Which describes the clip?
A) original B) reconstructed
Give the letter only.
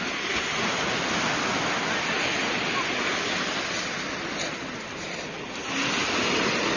A